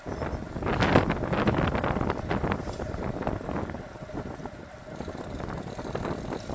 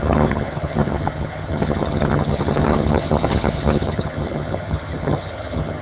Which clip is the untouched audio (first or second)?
first